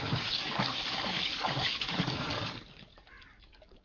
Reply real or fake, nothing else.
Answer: fake